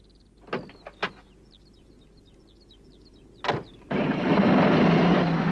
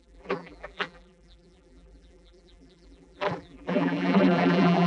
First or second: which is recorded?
first